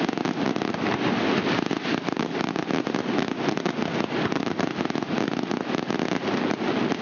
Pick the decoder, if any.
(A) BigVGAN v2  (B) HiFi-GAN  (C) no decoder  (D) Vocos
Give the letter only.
C